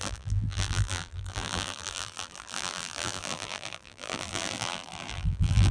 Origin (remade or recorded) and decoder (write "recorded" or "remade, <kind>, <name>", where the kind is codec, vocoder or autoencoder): remade, vocoder, BigVGAN v2